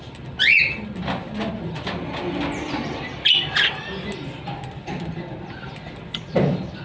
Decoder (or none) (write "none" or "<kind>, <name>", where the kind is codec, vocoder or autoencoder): none